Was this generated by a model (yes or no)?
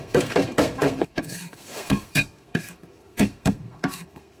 yes